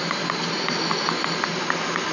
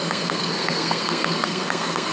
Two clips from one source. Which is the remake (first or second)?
second